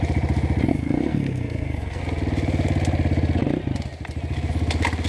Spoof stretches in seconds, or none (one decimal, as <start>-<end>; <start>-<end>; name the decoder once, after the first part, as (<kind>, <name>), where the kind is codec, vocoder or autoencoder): 0.7-2.0 (codec, SNAC)